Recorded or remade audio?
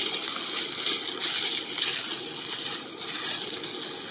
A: recorded